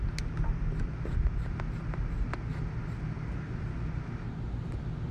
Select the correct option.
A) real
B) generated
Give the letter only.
A